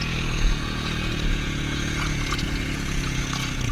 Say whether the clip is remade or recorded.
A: remade